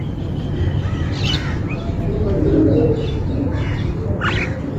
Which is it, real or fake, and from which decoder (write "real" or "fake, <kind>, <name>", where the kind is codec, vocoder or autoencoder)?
real